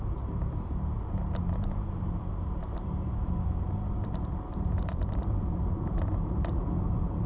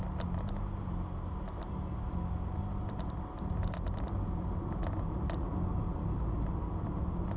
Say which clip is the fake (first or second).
first